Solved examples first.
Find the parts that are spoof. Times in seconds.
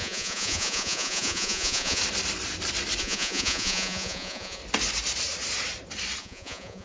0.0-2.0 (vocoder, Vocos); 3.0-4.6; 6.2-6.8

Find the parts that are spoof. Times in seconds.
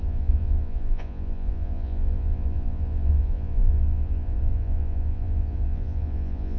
0.0-6.6 (vocoder, Vocos)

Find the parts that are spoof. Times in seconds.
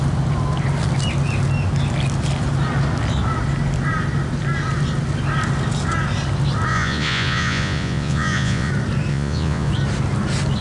6.7-8.7 (vocoder, Vocos); 9.1-9.7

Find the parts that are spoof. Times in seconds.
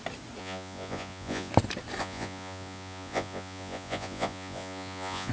0.4-1.5 (vocoder, Vocos); 2.0-5.3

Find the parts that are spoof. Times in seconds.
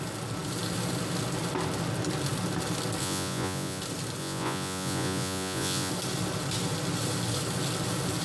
3.0-3.8 (vocoder, Vocos); 4.2-5.9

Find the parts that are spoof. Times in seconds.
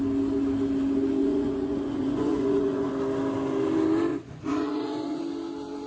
1.2-2.9 (vocoder, Vocos); 4.1-5.2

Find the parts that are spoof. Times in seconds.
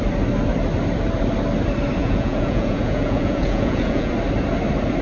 2.0-4.1 (vocoder, Vocos)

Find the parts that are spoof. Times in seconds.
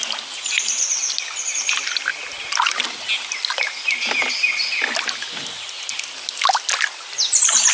none